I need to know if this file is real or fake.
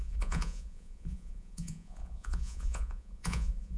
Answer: fake